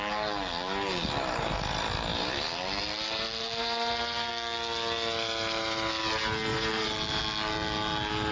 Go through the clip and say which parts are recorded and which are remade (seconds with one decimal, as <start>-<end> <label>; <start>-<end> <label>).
0.0-2.1 recorded; 2.1-4.3 remade; 4.3-6.5 recorded; 6.5-7.2 remade; 7.2-8.3 recorded